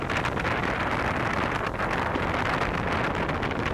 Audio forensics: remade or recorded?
recorded